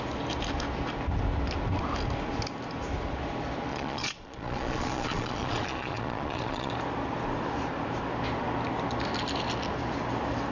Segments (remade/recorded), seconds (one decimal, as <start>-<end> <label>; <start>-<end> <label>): 0.0-3.7 recorded; 3.7-6.7 remade; 6.7-10.5 recorded